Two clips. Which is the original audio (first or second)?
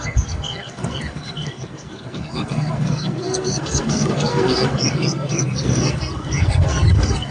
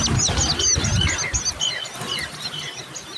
second